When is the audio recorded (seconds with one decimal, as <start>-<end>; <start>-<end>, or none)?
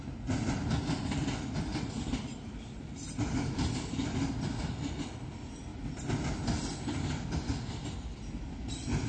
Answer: 0.0-1.7; 2.8-9.1